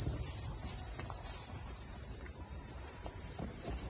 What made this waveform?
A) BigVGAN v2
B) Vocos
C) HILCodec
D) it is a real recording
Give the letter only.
A